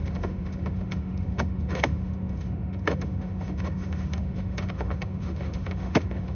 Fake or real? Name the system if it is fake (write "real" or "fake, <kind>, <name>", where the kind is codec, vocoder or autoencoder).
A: fake, autoencoder, DAC-VAE